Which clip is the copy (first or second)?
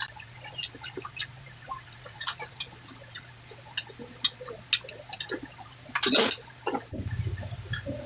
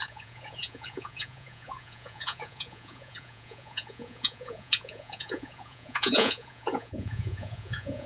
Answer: second